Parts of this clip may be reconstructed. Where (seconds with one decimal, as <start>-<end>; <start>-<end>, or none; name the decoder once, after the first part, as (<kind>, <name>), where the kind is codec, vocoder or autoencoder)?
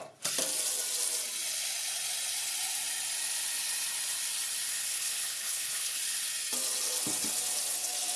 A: 4.9-6.0 (codec, HILCodec)